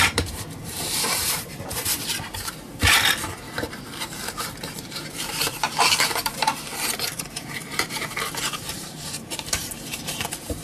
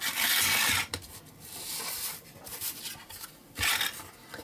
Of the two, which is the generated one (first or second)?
first